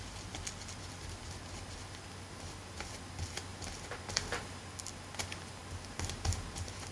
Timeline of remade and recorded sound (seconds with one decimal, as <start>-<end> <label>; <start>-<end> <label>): 0.0-6.9 recorded